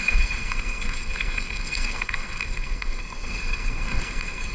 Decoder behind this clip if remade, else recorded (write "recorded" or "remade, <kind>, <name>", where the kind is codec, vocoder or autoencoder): remade, codec, SNAC